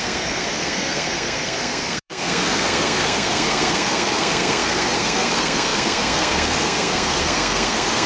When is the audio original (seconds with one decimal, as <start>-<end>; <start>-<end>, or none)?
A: none